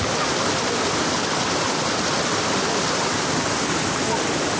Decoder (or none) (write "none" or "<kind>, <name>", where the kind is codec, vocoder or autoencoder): none